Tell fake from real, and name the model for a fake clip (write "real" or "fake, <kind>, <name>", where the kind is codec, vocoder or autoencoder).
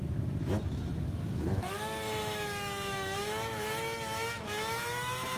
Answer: fake, autoencoder, DAC-VAE